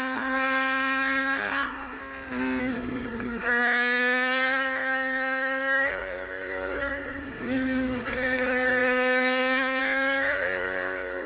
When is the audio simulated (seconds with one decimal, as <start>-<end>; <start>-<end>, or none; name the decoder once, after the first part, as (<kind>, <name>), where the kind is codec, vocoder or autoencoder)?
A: 0.0-2.0 (codec, SNAC); 2.6-11.3